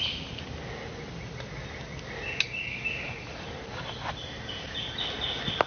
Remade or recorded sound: recorded